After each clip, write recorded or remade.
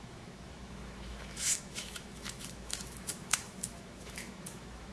remade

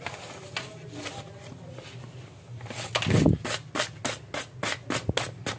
recorded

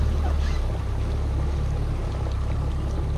recorded